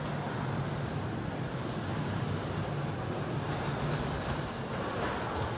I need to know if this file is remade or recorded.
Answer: recorded